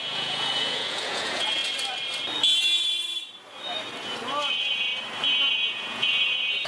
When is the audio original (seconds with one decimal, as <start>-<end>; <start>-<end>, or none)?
1.6-4.5; 4.9-5.5